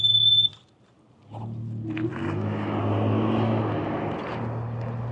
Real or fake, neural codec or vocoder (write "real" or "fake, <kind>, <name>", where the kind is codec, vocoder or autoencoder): real